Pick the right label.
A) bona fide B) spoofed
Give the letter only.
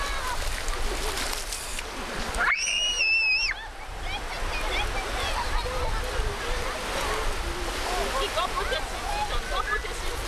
A